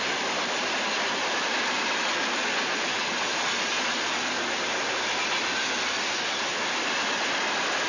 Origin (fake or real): real